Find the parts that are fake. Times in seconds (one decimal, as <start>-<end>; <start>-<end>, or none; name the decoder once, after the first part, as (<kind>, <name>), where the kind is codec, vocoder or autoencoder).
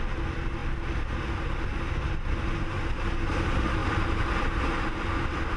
none